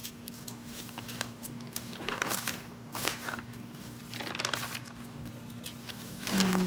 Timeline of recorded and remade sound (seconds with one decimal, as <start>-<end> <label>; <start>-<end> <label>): 0.0-4.0 remade; 4.0-4.8 recorded; 4.8-5.3 remade; 5.3-5.8 recorded; 5.8-6.7 remade